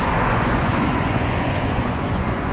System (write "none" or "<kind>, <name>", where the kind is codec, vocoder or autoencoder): vocoder, Vocos